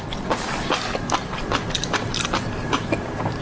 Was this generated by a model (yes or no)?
yes